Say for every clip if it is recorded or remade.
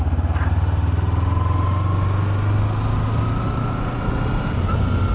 recorded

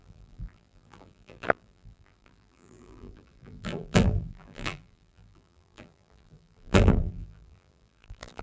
remade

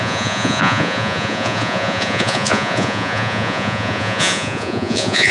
remade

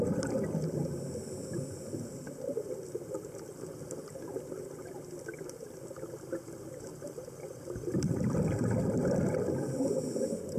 recorded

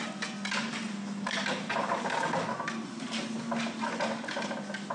recorded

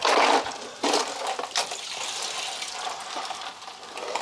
recorded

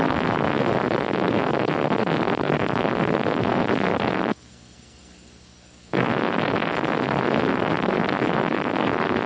remade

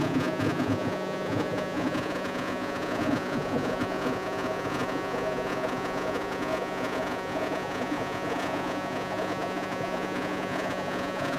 remade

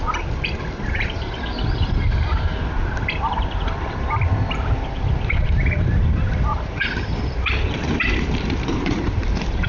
remade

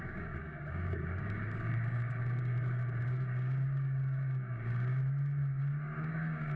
remade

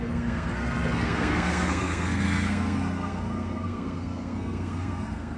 remade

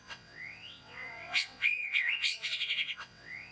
remade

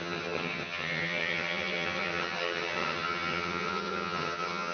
remade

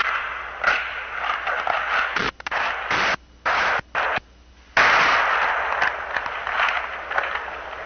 recorded